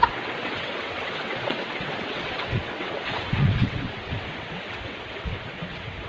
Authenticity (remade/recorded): remade